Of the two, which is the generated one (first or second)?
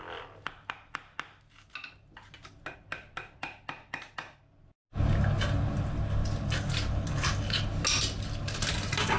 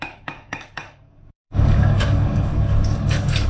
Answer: second